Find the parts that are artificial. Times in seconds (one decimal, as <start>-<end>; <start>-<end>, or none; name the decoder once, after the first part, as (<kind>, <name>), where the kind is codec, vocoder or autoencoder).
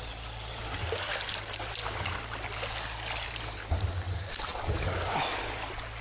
none